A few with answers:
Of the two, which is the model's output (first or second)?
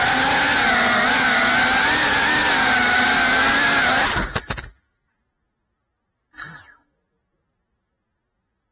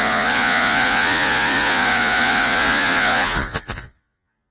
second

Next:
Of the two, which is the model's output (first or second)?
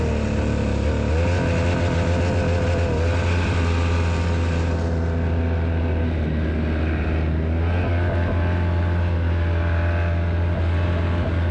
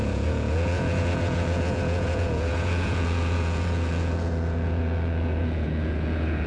second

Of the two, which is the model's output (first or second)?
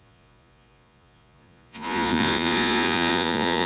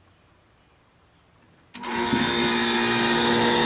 first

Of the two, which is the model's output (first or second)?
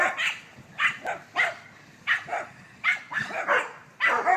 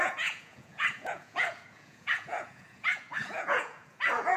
second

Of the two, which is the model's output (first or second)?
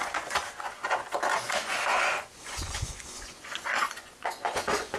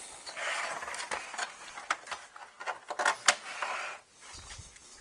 first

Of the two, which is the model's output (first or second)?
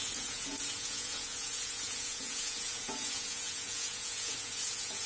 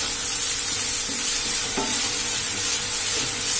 first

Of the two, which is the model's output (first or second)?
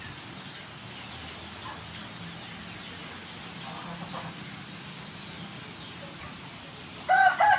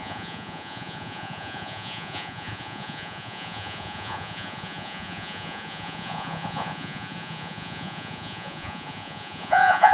second